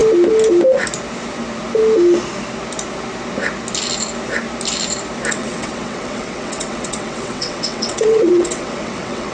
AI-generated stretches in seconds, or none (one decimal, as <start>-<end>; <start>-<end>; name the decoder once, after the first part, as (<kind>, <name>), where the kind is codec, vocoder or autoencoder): 5.3-9.3 (vocoder, WaveNeXt)